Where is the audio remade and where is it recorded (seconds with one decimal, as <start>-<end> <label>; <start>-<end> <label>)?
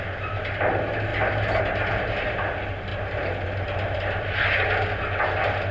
0.0-5.7 recorded